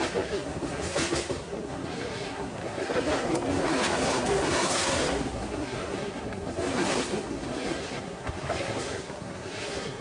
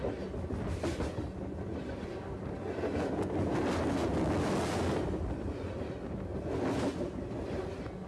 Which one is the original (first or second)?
second